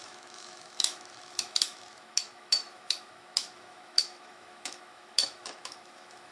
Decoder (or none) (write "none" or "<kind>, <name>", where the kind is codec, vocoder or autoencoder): autoencoder, DAC-VAE